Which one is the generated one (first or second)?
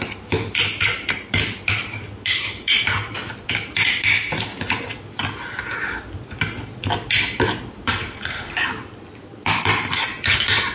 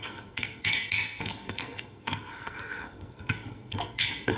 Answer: second